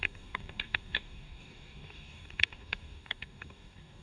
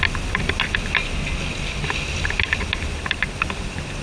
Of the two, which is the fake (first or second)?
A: first